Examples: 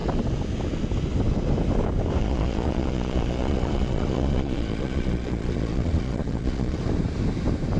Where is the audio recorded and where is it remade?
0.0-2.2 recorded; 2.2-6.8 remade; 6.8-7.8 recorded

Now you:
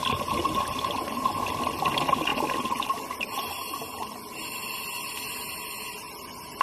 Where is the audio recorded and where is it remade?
0.0-6.6 recorded

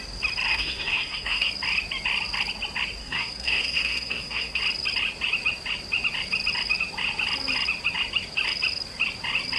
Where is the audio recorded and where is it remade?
0.0-0.5 recorded; 0.5-1.5 remade; 1.5-3.0 recorded; 3.0-4.6 remade; 4.6-9.6 recorded